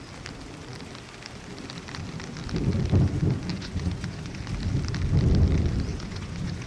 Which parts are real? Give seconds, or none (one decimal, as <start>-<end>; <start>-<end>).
0.0-3.5; 4.4-5.9